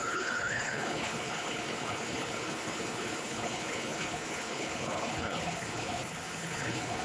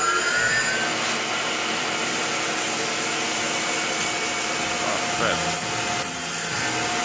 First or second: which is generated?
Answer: first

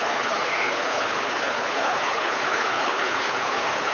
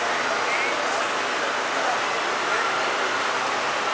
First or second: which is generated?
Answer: first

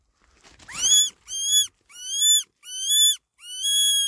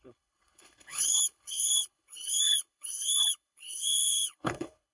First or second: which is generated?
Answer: second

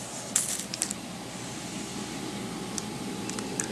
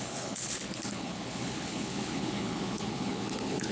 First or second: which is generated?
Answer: second